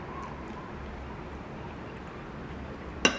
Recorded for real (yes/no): yes